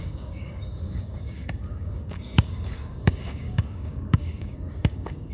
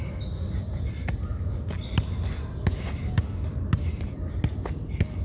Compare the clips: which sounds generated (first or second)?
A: first